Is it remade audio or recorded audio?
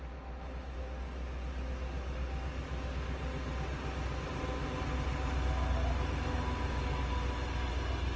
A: recorded